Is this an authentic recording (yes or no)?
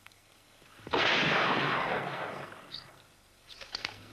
no